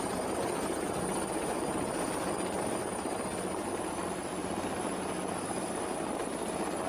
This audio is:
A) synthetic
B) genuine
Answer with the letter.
B